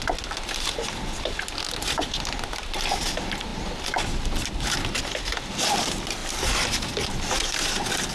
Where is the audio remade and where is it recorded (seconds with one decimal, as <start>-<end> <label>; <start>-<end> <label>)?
0.0-8.1 recorded